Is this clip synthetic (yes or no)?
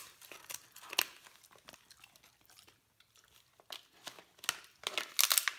no